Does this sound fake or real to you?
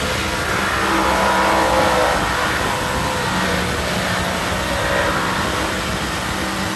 real